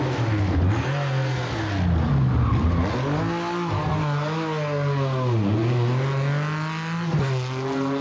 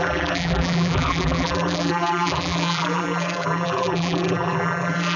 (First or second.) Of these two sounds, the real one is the first